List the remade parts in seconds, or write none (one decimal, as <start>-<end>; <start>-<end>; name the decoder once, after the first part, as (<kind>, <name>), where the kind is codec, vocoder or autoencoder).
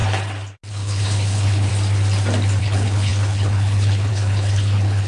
0.7-1.7 (codec, HILCodec); 2.6-5.1